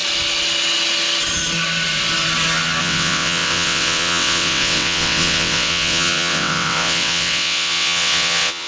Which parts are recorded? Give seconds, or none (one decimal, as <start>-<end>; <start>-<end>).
0.0-2.8